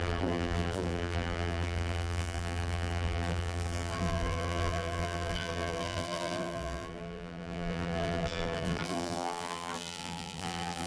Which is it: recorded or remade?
remade